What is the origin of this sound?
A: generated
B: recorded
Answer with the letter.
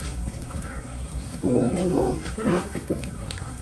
A